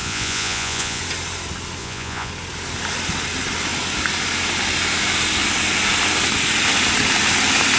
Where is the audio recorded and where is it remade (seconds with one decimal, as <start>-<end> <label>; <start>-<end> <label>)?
0.0-1.0 remade; 1.0-1.8 recorded; 1.8-2.3 remade; 2.3-7.8 recorded